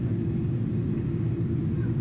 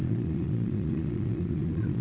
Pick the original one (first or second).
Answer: first